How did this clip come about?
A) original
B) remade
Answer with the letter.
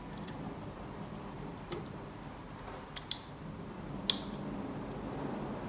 A